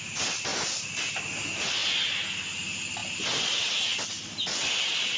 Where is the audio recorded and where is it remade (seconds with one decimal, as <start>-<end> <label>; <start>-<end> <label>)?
0.0-5.2 recorded

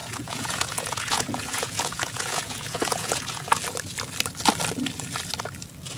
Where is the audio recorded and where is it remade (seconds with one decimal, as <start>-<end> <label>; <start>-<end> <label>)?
0.0-3.6 remade; 3.6-6.0 recorded

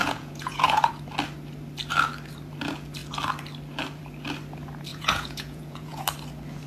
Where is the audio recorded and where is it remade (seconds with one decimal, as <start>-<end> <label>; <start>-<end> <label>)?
0.0-0.9 remade; 0.9-4.9 recorded; 4.9-6.0 remade; 6.0-6.7 recorded

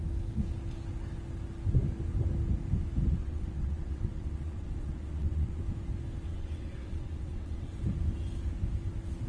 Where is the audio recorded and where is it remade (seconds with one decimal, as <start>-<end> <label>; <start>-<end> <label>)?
0.0-3.2 recorded; 3.2-5.6 remade; 5.6-6.3 recorded; 6.3-7.8 remade; 7.8-9.3 recorded

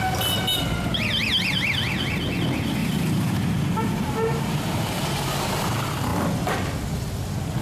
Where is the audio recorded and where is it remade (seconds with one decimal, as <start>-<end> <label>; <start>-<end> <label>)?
0.0-2.8 recorded; 2.8-4.6 remade; 4.6-7.6 recorded

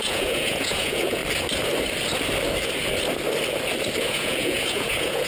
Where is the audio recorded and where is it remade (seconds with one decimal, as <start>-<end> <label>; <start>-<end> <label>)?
0.0-1.2 remade; 1.2-4.0 recorded; 4.0-5.3 remade

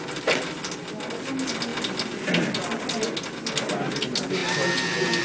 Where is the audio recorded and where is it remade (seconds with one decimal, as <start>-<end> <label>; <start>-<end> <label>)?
0.0-5.2 recorded